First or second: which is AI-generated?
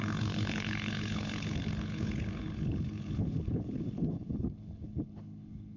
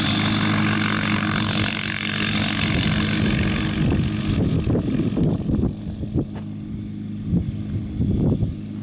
first